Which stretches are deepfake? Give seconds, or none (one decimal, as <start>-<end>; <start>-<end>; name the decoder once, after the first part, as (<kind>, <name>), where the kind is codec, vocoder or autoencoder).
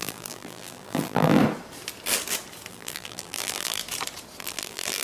0.0-1.4 (vocoder, BigVGAN v2); 2.7-3.8; 4.4-5.0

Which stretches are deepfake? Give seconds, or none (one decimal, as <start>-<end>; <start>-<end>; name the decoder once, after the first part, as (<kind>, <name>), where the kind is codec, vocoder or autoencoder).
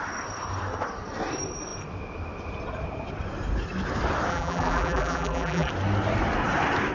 4.3-5.7 (vocoder, BigVGAN v2)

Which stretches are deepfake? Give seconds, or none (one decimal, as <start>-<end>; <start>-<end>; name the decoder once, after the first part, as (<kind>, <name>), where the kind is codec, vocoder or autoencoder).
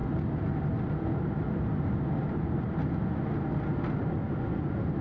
none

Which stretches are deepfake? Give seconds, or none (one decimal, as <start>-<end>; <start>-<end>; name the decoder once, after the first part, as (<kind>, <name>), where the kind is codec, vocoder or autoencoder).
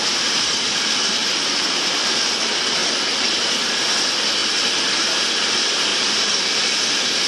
1.2-2.3 (vocoder, BigVGAN v2); 2.8-3.5; 5.9-6.4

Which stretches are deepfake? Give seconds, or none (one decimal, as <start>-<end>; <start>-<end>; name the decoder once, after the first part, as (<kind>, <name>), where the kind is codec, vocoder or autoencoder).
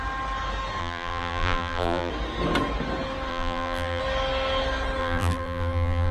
0.8-2.1 (vocoder, BigVGAN v2); 3.3-4.0; 5.0-6.1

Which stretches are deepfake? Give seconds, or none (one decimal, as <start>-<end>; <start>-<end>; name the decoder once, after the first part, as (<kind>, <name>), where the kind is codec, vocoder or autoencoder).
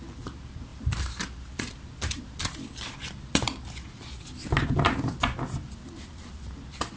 0.7-4.2 (vocoder, BigVGAN v2)